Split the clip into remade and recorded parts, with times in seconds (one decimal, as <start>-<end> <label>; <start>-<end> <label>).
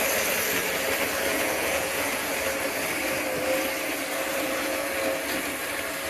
0.0-1.3 recorded; 1.3-2.3 remade; 2.3-4.3 recorded; 4.3-4.9 remade; 4.9-6.1 recorded